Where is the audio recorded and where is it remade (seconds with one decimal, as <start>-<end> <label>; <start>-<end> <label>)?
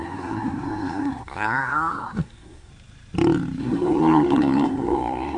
0.0-2.7 remade; 2.7-3.6 recorded; 3.6-5.4 remade